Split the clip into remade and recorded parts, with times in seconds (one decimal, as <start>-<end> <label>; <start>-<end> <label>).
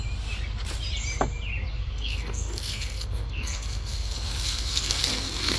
0.0-1.8 recorded; 1.8-5.6 remade